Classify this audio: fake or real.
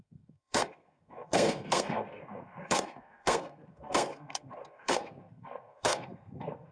fake